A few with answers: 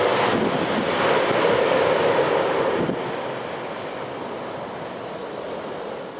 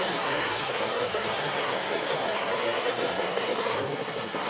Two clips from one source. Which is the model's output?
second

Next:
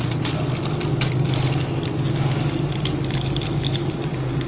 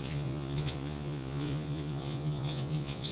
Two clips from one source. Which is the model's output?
second